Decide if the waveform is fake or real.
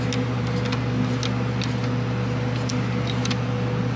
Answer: real